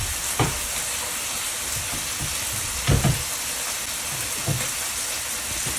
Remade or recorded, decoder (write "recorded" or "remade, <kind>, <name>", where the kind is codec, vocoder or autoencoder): recorded